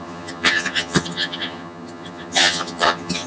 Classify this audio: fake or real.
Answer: fake